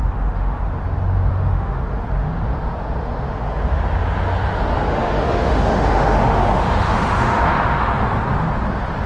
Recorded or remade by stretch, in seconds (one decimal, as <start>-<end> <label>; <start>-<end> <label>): 0.0-0.6 remade; 0.6-1.3 recorded; 1.3-1.8 remade; 1.8-4.9 recorded; 4.9-8.1 remade; 8.1-9.1 recorded